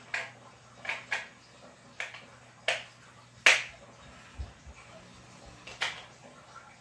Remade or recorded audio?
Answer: recorded